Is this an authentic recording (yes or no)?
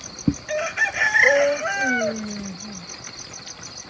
yes